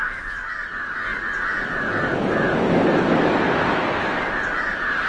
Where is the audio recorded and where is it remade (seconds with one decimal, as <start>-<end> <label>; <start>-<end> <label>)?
0.0-5.1 recorded